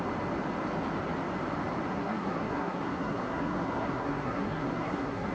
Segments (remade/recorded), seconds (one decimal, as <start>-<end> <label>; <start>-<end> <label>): 0.0-1.9 recorded; 1.9-5.3 remade